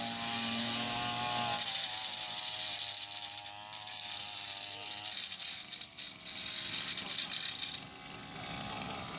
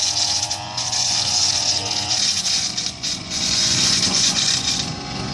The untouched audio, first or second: first